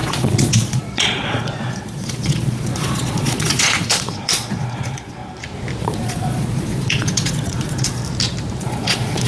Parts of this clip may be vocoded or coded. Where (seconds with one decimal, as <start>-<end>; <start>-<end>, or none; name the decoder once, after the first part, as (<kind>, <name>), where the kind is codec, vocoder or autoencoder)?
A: 0.0-5.2 (vocoder, Vocos); 5.8-8.0; 8.6-9.3